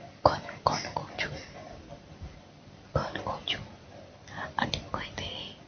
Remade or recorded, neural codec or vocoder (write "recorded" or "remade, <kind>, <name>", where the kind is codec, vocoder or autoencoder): recorded